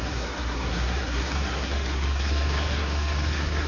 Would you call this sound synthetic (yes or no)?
yes